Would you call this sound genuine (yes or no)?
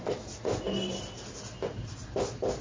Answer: yes